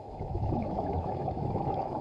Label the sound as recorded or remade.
remade